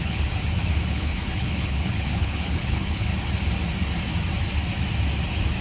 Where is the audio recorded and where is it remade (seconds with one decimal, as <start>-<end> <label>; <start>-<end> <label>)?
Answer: 0.0-3.1 remade; 3.1-5.6 recorded

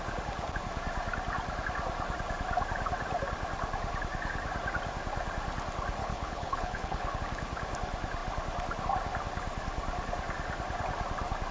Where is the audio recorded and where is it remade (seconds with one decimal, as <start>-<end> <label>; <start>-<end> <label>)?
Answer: 0.0-6.0 recorded; 6.0-7.2 remade; 7.2-11.5 recorded

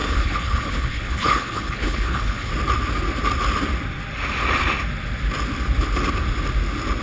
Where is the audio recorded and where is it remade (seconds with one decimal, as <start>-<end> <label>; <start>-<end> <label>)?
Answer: 0.0-2.5 remade; 2.5-7.0 recorded

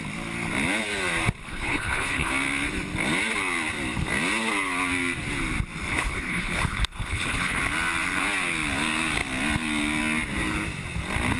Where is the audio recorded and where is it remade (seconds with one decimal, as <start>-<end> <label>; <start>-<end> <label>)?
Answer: 0.0-1.4 recorded; 1.4-2.3 remade; 2.3-5.9 recorded; 5.9-7.6 remade; 7.6-11.4 recorded

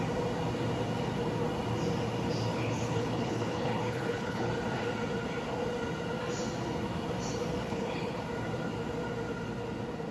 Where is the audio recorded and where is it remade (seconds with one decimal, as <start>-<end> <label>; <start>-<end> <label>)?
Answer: 0.0-2.5 recorded; 2.5-4.5 remade; 4.5-7.6 recorded; 7.6-8.2 remade; 8.2-10.1 recorded

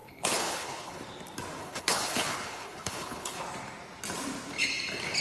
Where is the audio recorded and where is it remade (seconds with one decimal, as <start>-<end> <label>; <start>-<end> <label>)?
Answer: 0.0-1.0 remade; 1.0-1.6 recorded; 1.6-3.4 remade; 3.4-5.2 recorded